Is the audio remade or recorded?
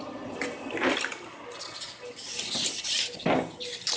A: recorded